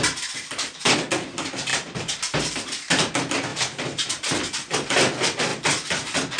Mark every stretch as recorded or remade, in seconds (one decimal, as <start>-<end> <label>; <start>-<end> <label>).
0.0-1.7 recorded; 1.7-3.1 remade; 3.1-3.5 recorded; 3.5-4.6 remade; 4.6-6.4 recorded